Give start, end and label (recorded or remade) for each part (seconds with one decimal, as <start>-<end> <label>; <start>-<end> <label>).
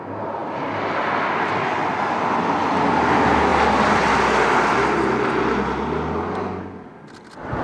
0.0-7.6 recorded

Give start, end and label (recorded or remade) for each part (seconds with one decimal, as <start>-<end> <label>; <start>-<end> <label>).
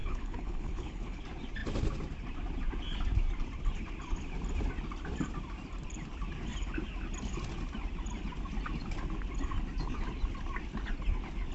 0.0-1.2 remade; 1.2-11.5 recorded